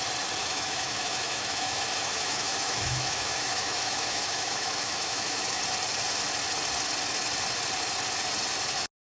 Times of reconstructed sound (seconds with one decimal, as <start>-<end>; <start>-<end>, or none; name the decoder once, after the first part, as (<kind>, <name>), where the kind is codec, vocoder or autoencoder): 0.4-5.6 (autoencoder, DAC-VAE)